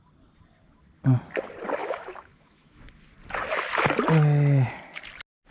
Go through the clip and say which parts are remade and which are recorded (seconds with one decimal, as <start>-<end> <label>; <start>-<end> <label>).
0.0-1.8 recorded; 1.8-2.8 remade; 2.8-5.5 recorded